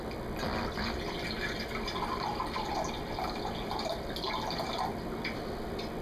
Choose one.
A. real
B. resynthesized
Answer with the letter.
A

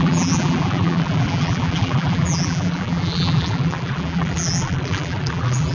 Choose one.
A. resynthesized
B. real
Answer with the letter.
A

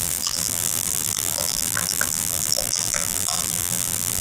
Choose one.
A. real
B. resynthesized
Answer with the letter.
B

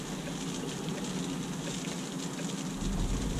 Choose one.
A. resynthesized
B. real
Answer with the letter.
B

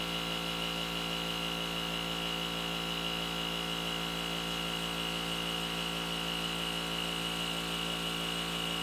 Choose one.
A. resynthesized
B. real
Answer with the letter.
B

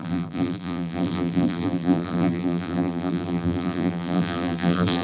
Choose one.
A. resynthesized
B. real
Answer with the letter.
A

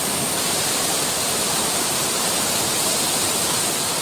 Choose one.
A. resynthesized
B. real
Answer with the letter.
A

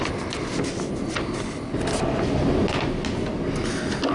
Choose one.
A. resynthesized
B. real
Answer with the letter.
B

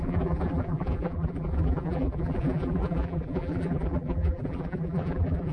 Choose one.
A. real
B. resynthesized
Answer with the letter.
B